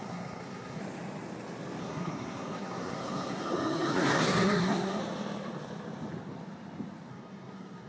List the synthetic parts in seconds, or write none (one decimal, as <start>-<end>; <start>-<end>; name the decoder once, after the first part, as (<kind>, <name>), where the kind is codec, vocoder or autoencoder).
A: 0.0-0.8 (codec, SNAC); 1.8-5.0; 7.1-7.9